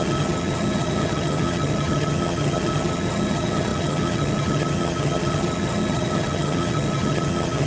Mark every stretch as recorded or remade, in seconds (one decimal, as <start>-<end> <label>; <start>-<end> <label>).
0.0-7.7 remade